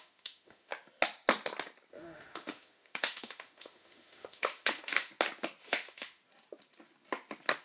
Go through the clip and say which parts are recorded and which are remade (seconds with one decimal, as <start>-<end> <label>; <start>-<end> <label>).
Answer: 0.0-0.7 remade; 0.7-1.9 recorded; 1.9-5.1 remade; 5.1-5.6 recorded; 5.6-6.2 remade; 6.2-7.6 recorded